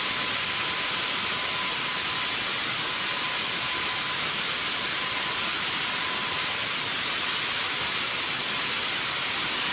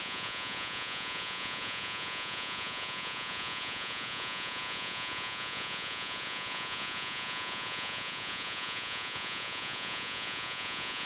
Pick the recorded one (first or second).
first